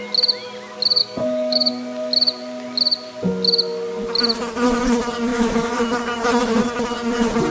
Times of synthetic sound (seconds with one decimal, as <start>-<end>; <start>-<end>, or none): 1.0-1.7; 5.3-5.8